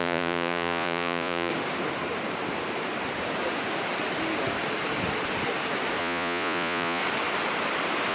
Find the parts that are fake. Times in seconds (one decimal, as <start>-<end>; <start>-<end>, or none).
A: 0.0-1.5; 6.0-7.0